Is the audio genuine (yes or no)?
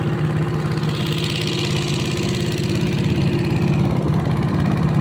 yes